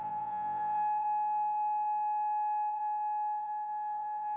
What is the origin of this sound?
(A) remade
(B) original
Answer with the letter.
A